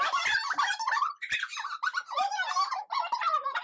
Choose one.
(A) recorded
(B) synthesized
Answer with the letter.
B